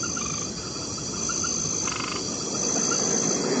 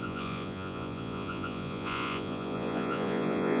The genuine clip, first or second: first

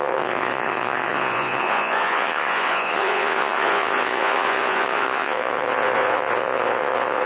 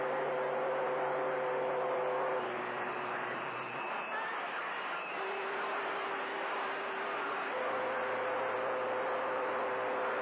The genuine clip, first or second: second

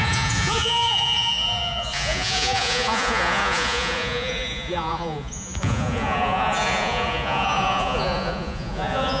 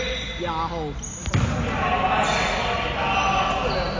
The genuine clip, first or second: second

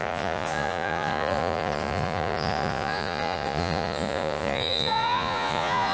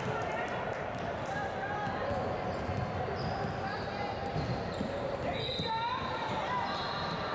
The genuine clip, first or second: second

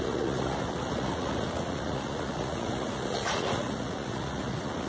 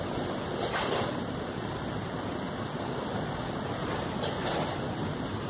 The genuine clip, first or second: second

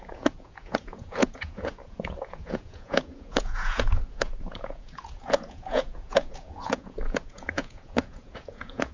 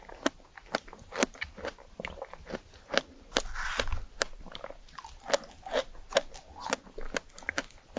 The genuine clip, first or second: second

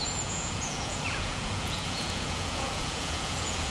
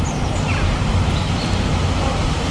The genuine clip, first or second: second